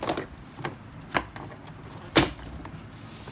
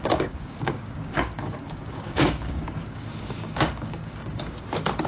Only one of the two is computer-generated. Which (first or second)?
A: second